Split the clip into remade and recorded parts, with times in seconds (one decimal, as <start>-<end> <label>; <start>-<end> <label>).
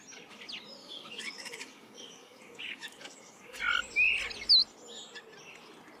0.0-0.8 recorded; 0.8-3.6 remade; 3.6-6.0 recorded